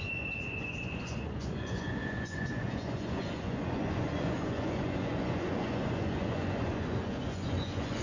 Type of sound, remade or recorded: remade